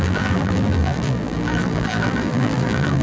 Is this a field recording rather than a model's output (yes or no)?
no